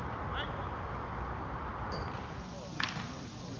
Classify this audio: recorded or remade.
recorded